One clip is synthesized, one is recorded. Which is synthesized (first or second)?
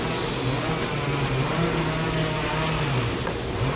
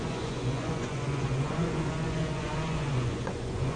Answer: second